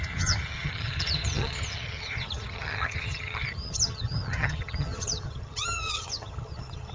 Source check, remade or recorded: remade